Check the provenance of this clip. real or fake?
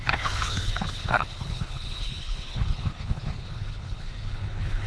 fake